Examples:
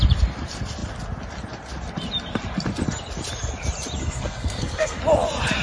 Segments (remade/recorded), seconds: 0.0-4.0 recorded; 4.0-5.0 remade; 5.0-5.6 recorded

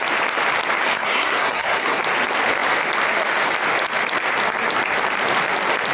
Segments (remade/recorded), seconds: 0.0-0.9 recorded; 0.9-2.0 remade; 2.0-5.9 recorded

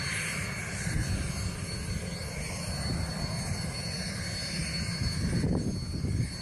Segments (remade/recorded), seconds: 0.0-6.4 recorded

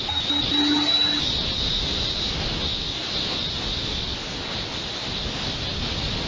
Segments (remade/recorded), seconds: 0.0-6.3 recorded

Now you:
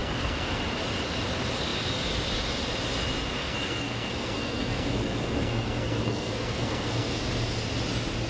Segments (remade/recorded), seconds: 0.0-0.6 remade; 0.6-3.4 recorded; 3.4-7.2 remade; 7.2-8.3 recorded

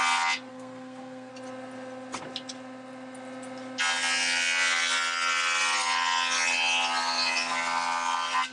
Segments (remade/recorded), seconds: 0.0-0.5 recorded; 0.5-1.3 remade; 1.3-8.5 recorded

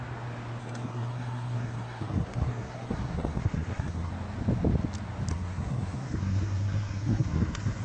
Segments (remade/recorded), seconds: 0.0-0.6 recorded; 0.6-4.1 remade; 4.1-5.3 recorded; 5.3-7.8 remade

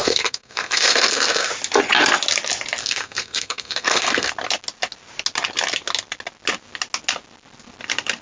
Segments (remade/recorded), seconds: 0.0-1.5 remade; 1.5-2.8 recorded; 2.8-4.3 remade; 4.3-8.2 recorded